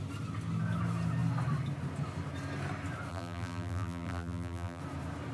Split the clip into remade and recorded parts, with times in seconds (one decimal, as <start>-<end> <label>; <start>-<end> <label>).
0.0-3.1 recorded; 3.1-4.8 remade; 4.8-5.3 recorded